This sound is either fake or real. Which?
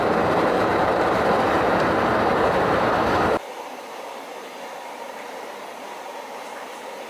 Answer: fake